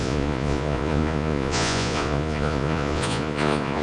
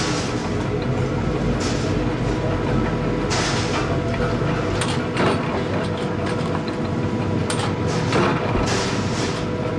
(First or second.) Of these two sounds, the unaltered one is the second